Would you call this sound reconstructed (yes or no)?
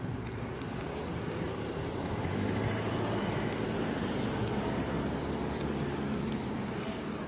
no